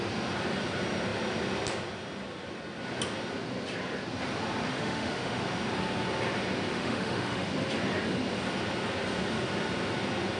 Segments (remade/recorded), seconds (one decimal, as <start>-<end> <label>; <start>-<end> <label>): 0.0-4.7 recorded; 4.7-5.4 remade; 5.4-6.7 recorded; 6.7-7.5 remade; 7.5-10.4 recorded